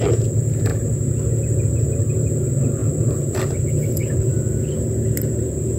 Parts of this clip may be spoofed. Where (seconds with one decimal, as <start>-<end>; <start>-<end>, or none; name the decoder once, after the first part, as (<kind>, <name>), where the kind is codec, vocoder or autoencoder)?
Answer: none